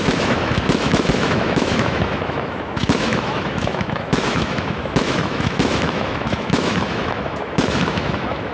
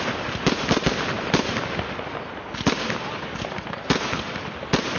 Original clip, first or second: second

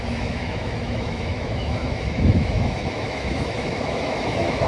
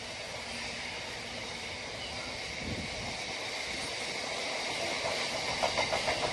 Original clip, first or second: second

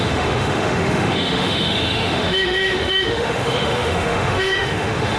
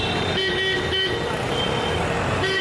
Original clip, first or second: second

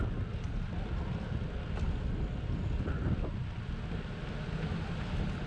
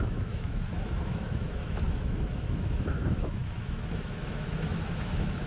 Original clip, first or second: first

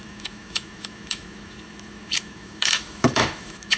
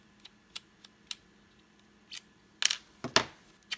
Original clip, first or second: second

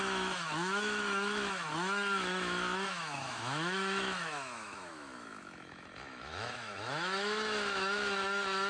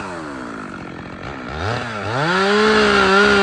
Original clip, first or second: second